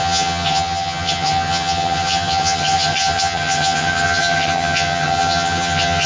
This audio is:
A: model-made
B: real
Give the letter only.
A